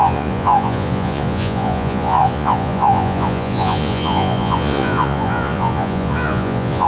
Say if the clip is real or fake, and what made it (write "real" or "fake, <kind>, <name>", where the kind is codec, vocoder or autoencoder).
fake, vocoder, Vocos